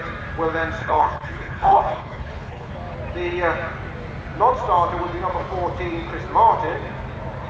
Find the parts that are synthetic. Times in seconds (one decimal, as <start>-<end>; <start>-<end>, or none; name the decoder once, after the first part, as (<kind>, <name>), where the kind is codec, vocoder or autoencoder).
0.8-2.7 (codec, HILCodec)